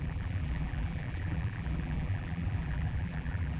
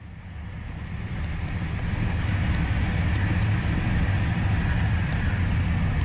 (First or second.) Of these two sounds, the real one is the second